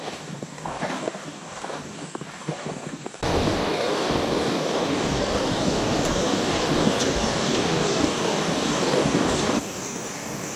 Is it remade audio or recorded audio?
remade